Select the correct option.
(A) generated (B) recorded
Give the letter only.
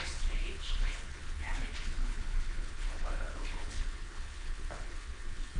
A